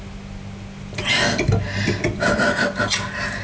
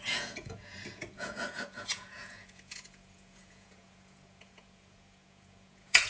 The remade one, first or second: second